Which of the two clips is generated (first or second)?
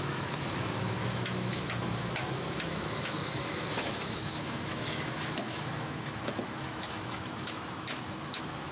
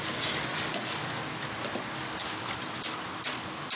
first